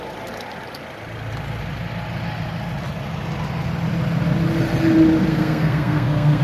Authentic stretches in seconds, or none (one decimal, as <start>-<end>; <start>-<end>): 0.0-5.3